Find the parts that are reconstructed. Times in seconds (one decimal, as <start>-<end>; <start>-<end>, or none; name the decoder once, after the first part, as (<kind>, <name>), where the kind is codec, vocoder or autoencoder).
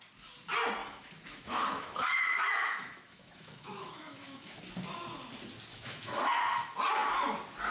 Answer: 0.8-4.6 (autoencoder, DAC-VAE); 5.7-6.2